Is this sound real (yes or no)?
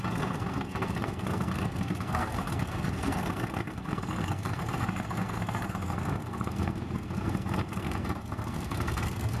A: no